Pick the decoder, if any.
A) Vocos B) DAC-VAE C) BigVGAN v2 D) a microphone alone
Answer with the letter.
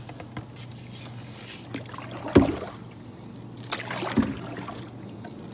D